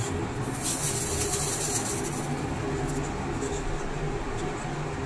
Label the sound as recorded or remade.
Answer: recorded